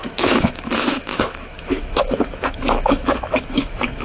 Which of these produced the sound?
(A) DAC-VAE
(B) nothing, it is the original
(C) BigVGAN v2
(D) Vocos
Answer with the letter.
A